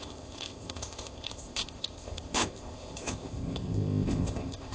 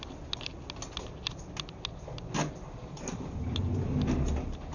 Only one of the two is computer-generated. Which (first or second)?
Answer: first